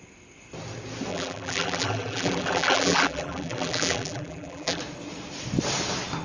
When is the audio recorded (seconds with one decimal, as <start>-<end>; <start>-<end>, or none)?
0.0-1.1; 4.8-6.2